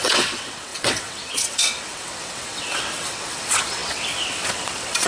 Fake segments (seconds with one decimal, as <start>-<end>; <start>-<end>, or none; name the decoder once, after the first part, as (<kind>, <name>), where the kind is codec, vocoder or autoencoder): 0.0-5.1 (vocoder, WaveNeXt)